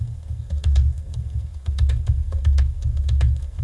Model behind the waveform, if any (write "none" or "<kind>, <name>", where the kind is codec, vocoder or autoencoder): codec, SNAC